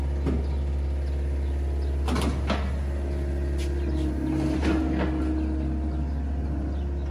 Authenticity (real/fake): real